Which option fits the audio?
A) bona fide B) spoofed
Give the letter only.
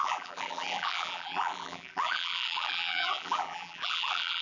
B